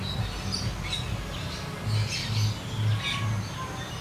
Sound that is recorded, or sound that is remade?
recorded